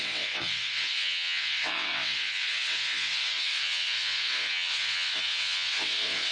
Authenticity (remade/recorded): remade